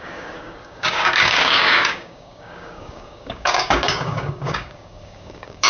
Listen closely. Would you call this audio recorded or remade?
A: remade